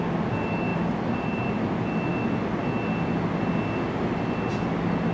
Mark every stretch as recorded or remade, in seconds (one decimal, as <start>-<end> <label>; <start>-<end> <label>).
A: 0.0-5.1 recorded